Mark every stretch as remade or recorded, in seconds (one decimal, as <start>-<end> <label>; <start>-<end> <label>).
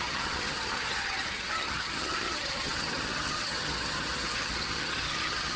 0.0-5.6 remade